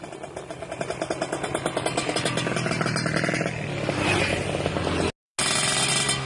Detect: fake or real real